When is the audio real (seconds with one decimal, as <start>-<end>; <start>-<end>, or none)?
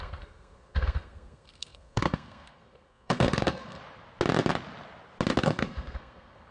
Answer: 3.8-5.4